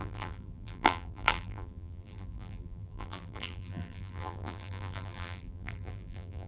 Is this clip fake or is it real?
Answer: fake